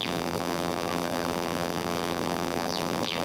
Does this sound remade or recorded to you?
remade